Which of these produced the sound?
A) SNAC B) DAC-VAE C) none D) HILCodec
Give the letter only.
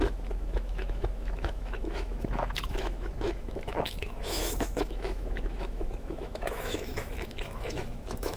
B